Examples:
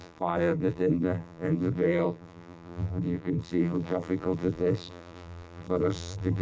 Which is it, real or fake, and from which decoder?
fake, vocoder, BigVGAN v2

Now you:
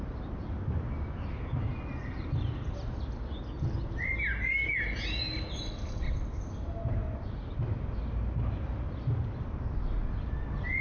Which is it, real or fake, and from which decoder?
real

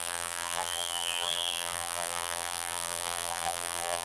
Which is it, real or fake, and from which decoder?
fake, vocoder, BigVGAN v2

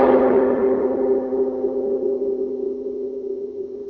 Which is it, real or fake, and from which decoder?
fake, vocoder, HiFi-GAN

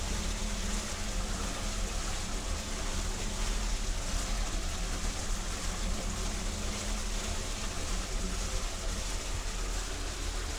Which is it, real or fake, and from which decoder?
real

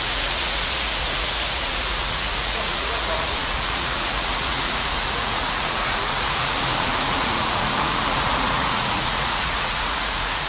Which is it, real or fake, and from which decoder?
fake, vocoder, Vocos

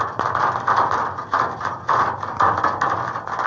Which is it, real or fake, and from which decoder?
real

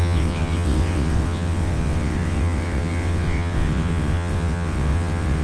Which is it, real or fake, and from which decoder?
fake, vocoder, WaveNeXt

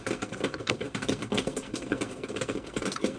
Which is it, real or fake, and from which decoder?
fake, codec, SNAC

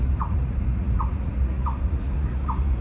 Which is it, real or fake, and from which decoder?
fake, vocoder, Vocos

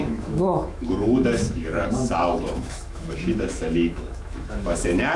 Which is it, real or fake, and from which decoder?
fake, autoencoder, DAC-VAE